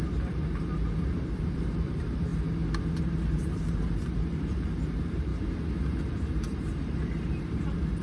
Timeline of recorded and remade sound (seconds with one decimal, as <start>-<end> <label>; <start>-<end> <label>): 0.0-2.3 remade; 2.3-3.0 recorded; 3.0-5.3 remade; 5.3-6.0 recorded; 6.0-8.0 remade